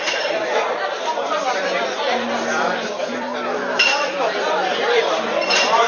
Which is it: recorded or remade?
remade